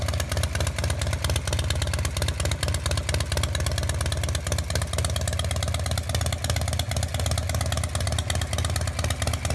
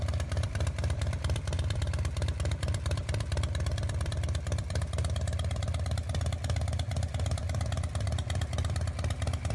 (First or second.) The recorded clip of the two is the first